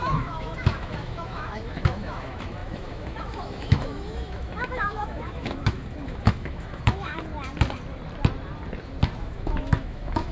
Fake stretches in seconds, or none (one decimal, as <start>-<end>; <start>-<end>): 0.0-7.3; 9.2-10.3